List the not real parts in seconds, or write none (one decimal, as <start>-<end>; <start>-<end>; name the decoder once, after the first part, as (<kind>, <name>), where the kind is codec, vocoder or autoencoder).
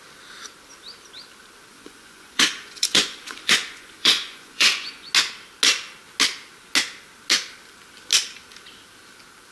1.7-5.1 (vocoder, Vocos)